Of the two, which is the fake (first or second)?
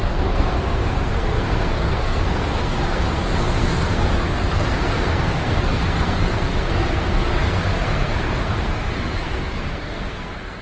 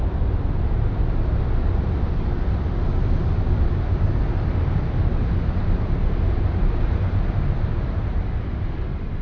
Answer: first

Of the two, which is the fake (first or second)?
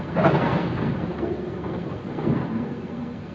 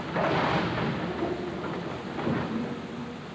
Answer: first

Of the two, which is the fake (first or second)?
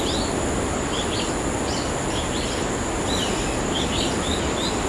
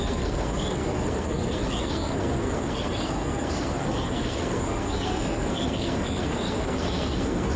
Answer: second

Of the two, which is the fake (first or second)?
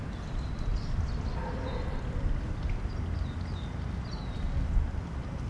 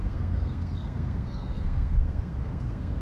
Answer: second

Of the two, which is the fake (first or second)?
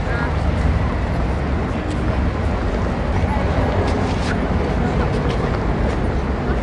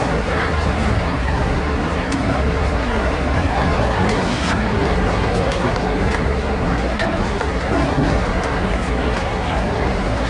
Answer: second